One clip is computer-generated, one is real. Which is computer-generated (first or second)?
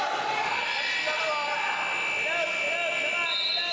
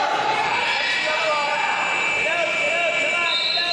second